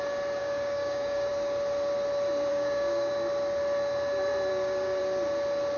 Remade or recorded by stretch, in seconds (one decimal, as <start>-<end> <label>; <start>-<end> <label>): 0.0-0.4 recorded; 0.4-1.3 remade; 1.3-2.5 recorded; 2.5-3.1 remade; 3.1-4.5 recorded; 4.5-5.0 remade; 5.0-5.8 recorded

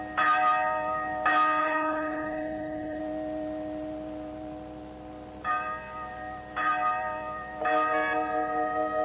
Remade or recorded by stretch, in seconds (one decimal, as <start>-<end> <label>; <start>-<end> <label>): 0.0-1.6 recorded; 1.6-3.0 remade; 3.0-9.0 recorded

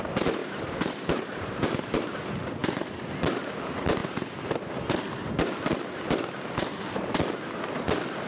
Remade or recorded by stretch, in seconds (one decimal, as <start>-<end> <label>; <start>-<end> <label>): 0.0-0.4 recorded; 0.4-2.1 remade; 2.1-2.6 recorded; 2.6-3.1 remade; 3.1-4.0 recorded; 4.0-4.7 remade; 4.7-8.3 recorded

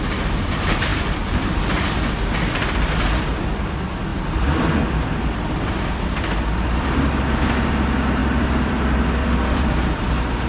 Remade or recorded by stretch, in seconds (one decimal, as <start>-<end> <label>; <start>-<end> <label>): 0.0-0.9 recorded; 0.9-2.4 remade; 2.4-4.1 recorded; 4.1-6.9 remade; 6.9-8.2 recorded; 8.2-10.1 remade; 10.1-10.5 recorded

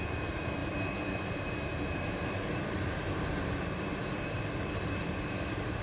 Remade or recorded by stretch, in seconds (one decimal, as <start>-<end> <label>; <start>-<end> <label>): 0.0-5.8 remade

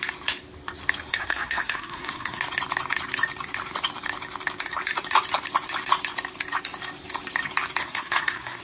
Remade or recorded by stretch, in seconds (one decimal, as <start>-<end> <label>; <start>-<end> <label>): 0.0-1.1 recorded; 1.1-2.4 remade; 2.4-7.8 recorded; 7.8-8.6 remade

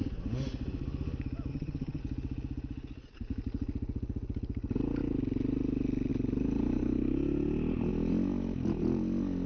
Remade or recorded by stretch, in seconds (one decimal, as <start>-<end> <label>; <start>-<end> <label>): 0.0-1.5 recorded; 1.5-2.0 remade; 2.0-9.5 recorded

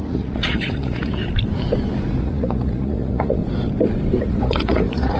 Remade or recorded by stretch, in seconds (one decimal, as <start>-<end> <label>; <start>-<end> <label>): 0.0-1.2 remade; 1.2-2.2 recorded; 2.2-3.4 remade; 3.4-4.2 recorded; 4.2-5.2 remade